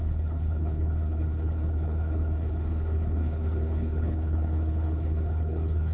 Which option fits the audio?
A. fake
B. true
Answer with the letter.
A